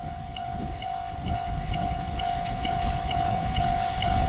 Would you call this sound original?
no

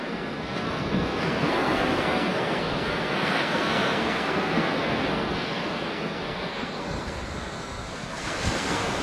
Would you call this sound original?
no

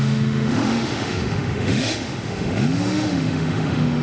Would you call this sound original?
no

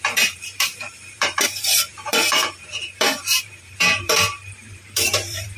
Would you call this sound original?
no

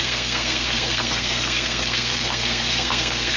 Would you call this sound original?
no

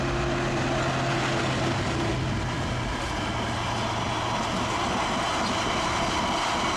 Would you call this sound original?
yes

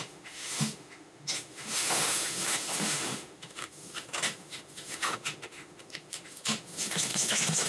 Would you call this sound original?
no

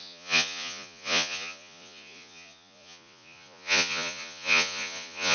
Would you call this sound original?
no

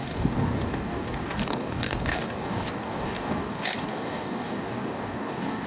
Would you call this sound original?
no